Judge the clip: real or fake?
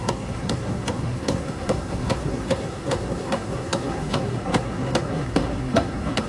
fake